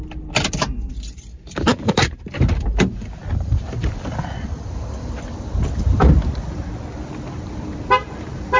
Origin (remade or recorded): remade